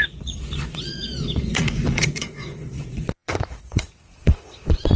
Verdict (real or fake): fake